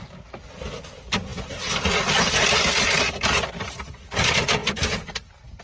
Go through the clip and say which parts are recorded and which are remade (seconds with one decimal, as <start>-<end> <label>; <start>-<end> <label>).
0.0-5.6 recorded